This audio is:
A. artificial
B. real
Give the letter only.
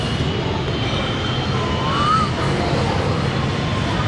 B